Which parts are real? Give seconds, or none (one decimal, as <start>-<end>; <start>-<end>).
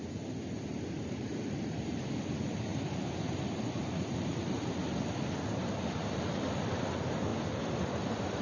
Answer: 0.0-0.7; 2.0-2.7; 5.0-5.6; 6.8-8.4